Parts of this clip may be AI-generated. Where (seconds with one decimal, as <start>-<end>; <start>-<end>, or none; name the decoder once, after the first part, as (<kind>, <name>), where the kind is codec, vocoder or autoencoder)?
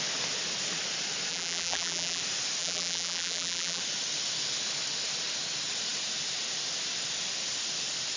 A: 1.3-2.2 (vocoder, BigVGAN v2); 2.6-3.8